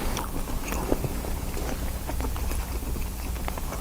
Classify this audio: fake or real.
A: real